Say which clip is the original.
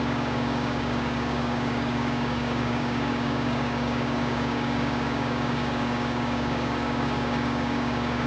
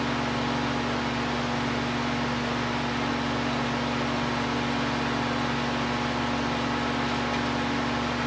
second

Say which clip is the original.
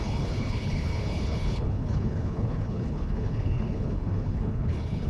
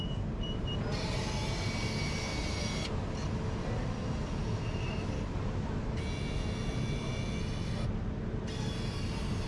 second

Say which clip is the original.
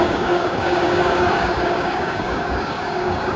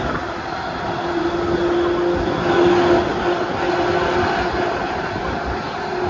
second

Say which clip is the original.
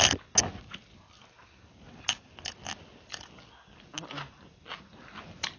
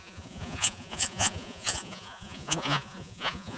first